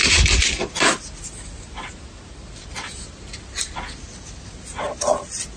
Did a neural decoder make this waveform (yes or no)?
no